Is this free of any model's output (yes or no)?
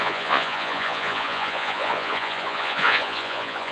no